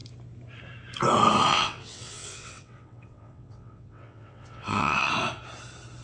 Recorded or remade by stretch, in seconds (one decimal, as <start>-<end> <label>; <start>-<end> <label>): 0.0-1.5 recorded; 1.5-5.1 remade; 5.1-6.0 recorded